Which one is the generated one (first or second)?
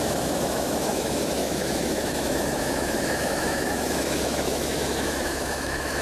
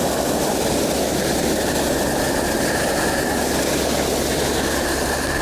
first